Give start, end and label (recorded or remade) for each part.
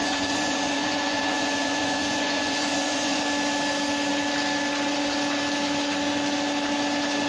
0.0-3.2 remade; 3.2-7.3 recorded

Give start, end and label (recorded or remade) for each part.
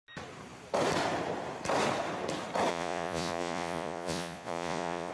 0.0-2.7 recorded; 2.7-5.1 remade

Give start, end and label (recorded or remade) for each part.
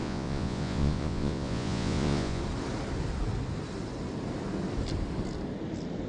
0.0-2.4 remade; 2.4-6.1 recorded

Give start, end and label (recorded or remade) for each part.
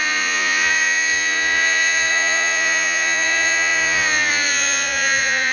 0.0-5.5 remade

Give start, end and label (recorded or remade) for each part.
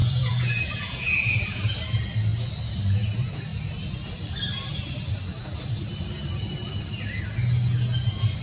0.0-1.6 remade; 1.6-8.4 recorded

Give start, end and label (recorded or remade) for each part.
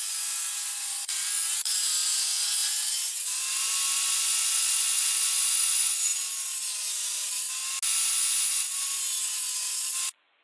0.0-6.1 remade; 6.1-6.9 recorded; 6.9-7.6 remade; 7.6-8.5 recorded; 8.5-10.4 remade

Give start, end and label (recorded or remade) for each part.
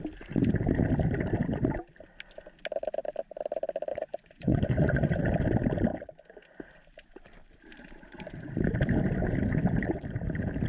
0.0-3.9 recorded; 3.9-5.2 remade; 5.2-10.7 recorded